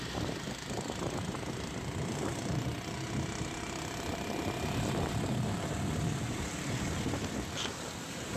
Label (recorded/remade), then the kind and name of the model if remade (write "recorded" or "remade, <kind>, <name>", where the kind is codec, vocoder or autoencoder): remade, vocoder, BigVGAN v2